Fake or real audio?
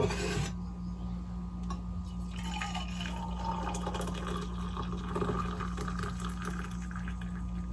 real